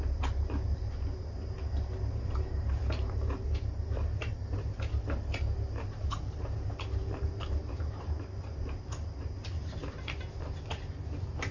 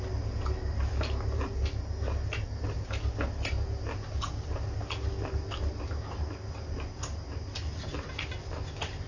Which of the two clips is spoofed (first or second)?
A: first